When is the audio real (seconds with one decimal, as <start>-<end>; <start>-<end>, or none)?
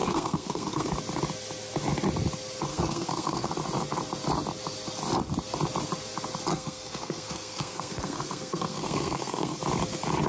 0.9-2.7; 3.5-6.5; 9.6-10.3